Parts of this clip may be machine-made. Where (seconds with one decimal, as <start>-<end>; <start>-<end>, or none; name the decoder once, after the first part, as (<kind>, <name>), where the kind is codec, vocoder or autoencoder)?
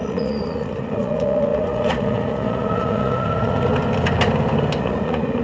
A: 0.0-3.7 (vocoder, Vocos); 4.8-5.4